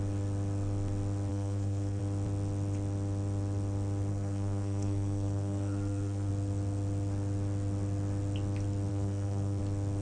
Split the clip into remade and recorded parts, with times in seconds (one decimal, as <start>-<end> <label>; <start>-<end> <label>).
0.0-1.3 recorded; 1.3-2.0 remade; 2.0-4.1 recorded; 4.1-6.3 remade; 6.3-8.9 recorded; 8.9-9.6 remade; 9.6-10.0 recorded